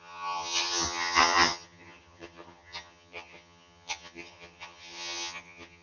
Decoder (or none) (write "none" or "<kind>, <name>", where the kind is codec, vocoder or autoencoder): vocoder, HiFi-GAN